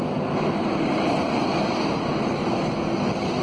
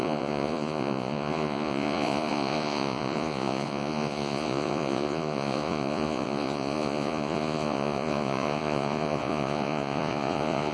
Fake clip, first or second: second